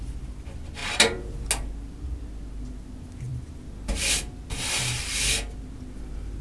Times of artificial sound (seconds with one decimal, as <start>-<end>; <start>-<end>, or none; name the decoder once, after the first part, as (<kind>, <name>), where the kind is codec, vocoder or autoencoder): 0.8-1.5 (vocoder, BigVGAN v2)